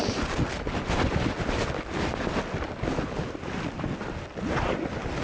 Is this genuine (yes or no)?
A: yes